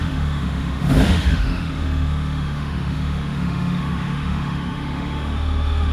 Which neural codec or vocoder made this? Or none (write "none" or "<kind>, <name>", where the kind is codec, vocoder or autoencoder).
autoencoder, DAC-VAE